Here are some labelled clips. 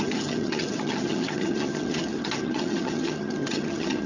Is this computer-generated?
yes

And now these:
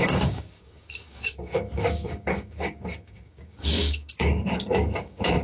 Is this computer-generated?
yes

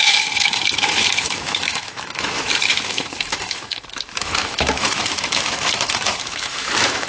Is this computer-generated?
yes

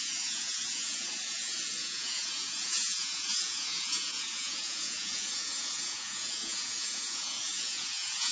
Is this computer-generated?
yes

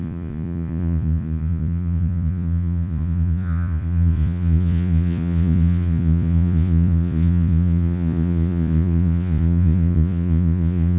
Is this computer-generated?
yes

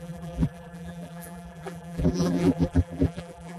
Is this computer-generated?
yes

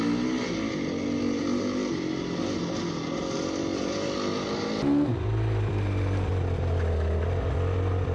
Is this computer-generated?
no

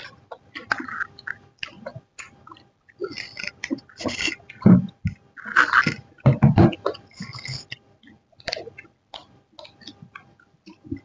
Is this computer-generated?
no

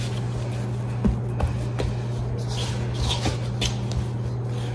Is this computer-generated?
no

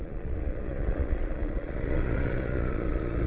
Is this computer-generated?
yes